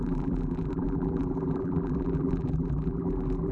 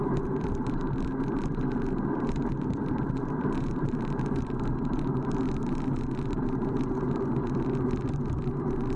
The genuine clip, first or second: second